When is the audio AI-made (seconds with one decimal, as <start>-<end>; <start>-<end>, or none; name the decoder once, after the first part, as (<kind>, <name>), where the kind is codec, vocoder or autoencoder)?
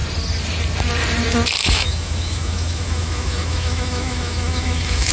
1.6-5.1 (autoencoder, DAC-VAE)